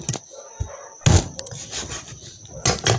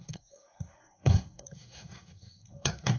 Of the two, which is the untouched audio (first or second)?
first